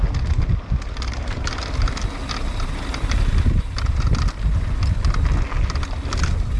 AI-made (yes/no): no